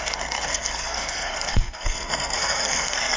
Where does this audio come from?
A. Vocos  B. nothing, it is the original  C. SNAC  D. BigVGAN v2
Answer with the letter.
C